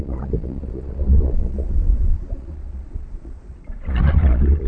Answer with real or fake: fake